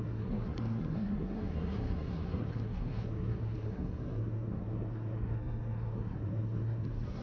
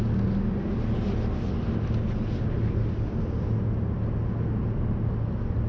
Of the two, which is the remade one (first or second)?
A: first